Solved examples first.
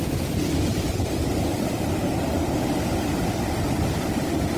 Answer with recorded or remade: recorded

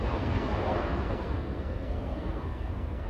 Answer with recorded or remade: remade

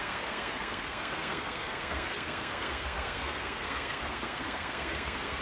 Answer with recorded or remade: remade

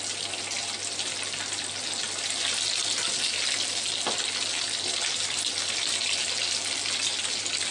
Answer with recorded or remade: recorded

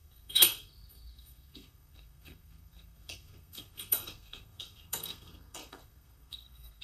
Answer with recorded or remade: remade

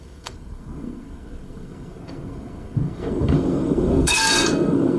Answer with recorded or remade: remade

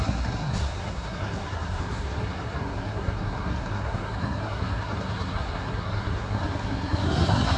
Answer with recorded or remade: remade